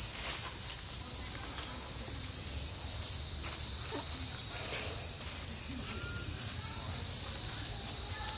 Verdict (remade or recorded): recorded